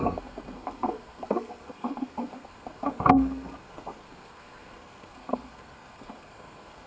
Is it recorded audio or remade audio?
remade